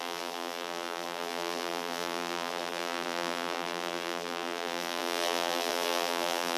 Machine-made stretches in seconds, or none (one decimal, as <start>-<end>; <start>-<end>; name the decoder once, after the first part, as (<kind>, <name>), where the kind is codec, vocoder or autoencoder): 0.0-6.6 (vocoder, BigVGAN v2)

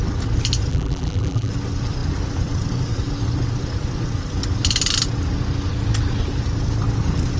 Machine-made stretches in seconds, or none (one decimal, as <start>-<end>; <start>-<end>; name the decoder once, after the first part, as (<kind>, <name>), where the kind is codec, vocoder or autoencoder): 0.7-1.5 (vocoder, BigVGAN v2)

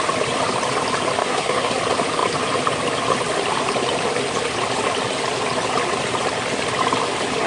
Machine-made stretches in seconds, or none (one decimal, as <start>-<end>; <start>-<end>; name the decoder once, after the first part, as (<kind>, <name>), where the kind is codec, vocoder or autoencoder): 1.2-1.7 (codec, SNAC)

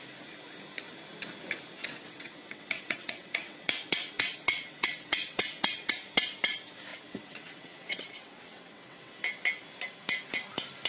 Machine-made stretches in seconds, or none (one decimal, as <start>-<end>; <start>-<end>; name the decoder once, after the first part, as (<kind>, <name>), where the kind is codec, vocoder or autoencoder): 1.8-5.9 (vocoder, WaveNeXt); 6.9-9.1

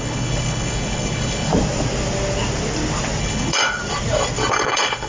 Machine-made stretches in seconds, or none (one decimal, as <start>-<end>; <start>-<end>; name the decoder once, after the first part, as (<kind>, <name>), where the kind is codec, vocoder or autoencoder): 0.0-1.5 (codec, HILCodec); 3.2-3.8; 4.5-5.1